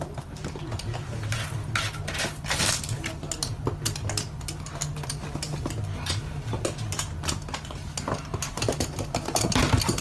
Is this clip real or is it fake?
real